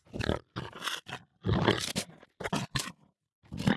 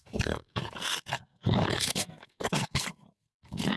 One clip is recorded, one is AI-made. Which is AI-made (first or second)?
second